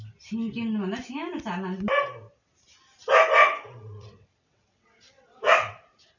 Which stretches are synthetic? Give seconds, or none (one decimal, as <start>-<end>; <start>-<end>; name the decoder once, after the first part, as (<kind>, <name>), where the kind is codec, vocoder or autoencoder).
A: 3.4-5.8 (vocoder, WaveNeXt)